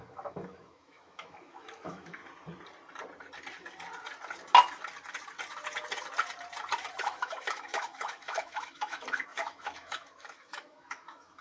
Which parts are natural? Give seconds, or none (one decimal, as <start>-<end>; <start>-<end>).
2.2-7.0